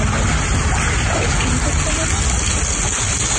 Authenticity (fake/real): real